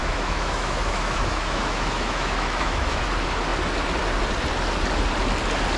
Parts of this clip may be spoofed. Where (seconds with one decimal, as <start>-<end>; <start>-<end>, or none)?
0.0-3.1